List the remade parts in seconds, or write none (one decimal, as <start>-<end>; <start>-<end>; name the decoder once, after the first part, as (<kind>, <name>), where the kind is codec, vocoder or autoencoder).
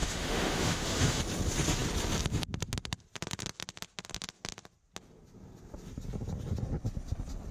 0.0-1.2 (autoencoder, DAC-VAE)